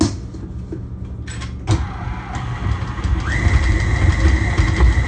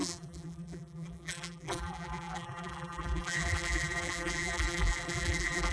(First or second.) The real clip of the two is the first